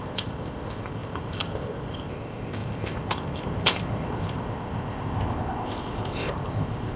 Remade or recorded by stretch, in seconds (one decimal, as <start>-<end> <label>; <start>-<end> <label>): 0.0-7.0 remade